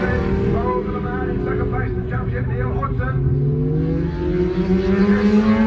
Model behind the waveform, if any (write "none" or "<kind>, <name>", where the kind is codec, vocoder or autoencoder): none